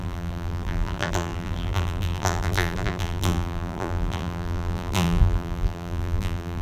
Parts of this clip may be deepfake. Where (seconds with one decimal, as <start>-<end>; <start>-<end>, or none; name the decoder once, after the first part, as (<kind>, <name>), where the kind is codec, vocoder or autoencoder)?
0.0-6.6 (vocoder, BigVGAN v2)